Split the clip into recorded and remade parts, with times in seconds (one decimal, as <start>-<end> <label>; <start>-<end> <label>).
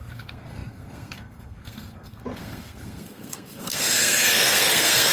0.0-5.1 remade